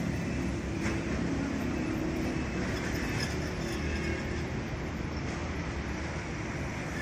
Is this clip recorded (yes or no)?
yes